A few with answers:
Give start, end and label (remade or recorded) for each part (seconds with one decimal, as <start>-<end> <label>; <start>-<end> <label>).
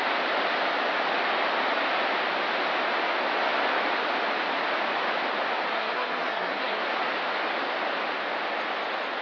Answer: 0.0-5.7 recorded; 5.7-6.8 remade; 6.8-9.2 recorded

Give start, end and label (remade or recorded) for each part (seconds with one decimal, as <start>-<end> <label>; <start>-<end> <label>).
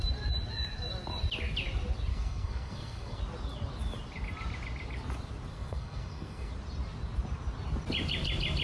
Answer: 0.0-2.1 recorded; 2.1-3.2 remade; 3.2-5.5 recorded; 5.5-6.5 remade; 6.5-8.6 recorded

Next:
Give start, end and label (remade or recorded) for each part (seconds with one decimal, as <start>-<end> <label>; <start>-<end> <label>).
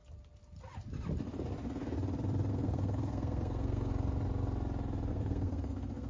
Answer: 0.0-2.5 recorded; 2.5-3.9 remade; 3.9-5.1 recorded; 5.1-6.1 remade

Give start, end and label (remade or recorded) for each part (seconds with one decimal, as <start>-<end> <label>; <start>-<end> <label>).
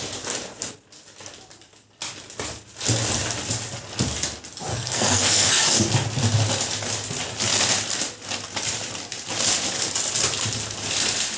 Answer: 0.0-4.7 recorded; 4.7-5.6 remade; 5.6-11.4 recorded